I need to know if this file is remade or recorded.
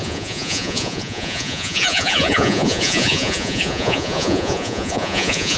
remade